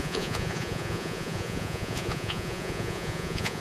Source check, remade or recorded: remade